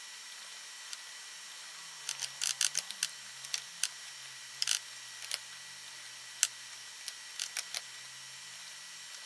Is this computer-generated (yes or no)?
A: no